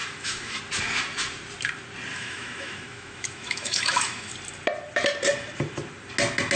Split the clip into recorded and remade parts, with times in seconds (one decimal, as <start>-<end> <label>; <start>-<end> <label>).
0.0-0.6 remade; 0.6-2.1 recorded; 2.1-4.3 remade; 4.3-6.6 recorded